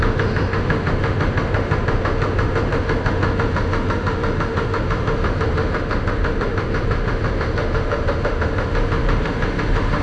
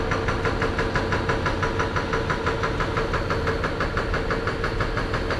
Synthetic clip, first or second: first